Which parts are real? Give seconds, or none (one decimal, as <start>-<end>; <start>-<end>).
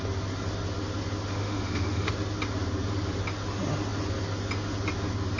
0.0-1.3; 2.1-5.4